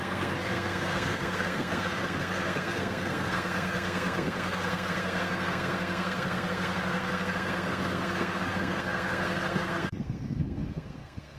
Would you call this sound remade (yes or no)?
yes